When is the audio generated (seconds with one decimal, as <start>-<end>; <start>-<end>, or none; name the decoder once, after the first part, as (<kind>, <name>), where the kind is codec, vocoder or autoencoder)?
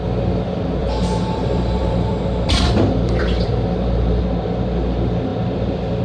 0.8-4.2 (vocoder, BigVGAN v2); 5.3-6.0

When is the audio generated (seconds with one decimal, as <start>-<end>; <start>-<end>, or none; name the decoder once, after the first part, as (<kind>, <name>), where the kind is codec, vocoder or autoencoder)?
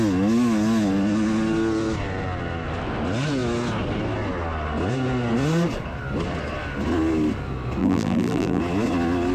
7.8-8.6 (vocoder, BigVGAN v2)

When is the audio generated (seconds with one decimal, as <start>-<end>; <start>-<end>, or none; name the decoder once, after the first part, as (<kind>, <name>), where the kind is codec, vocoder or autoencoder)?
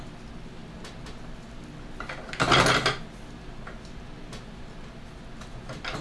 none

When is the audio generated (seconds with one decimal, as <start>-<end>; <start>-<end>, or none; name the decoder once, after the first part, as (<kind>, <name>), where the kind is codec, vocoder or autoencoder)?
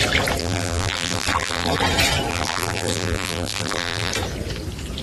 0.4-1.8 (vocoder, BigVGAN v2); 2.3-4.1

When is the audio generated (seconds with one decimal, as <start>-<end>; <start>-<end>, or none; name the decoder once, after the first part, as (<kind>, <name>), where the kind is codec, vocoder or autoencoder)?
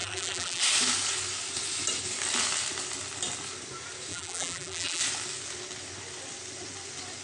0.0-0.6 (vocoder, BigVGAN v2); 4.1-5.0